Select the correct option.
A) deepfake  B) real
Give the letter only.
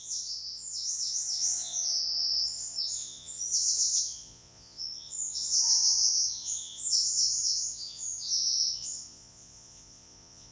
A